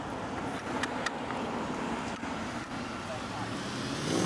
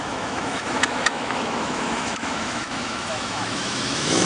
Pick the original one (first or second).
first